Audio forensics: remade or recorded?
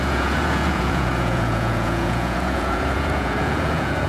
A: remade